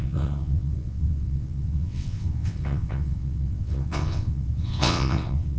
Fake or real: fake